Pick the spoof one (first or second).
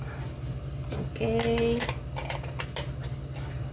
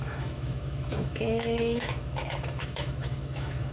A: second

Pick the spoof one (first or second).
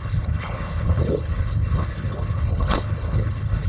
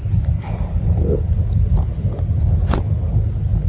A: first